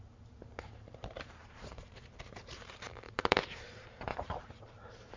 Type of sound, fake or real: fake